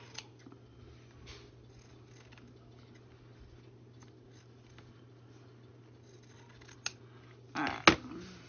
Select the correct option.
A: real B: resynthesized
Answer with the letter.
A